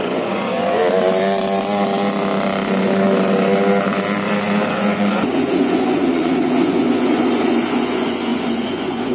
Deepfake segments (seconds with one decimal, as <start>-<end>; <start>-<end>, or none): 0.0-0.8; 4.7-9.1